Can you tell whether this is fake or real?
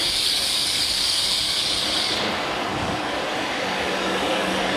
fake